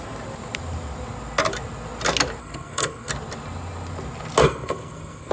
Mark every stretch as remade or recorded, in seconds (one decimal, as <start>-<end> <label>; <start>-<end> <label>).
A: 0.0-2.4 recorded; 2.4-3.1 remade; 3.1-4.4 recorded; 4.4-5.3 remade